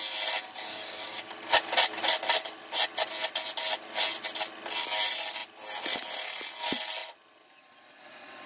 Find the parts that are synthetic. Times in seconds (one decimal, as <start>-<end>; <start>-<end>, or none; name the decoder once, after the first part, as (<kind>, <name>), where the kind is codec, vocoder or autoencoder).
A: 0.7-1.3 (codec, DAC)